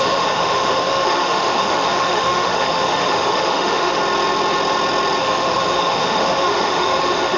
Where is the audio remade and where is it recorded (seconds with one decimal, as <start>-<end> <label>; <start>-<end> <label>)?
0.0-4.0 remade; 4.0-5.2 recorded; 5.2-7.4 remade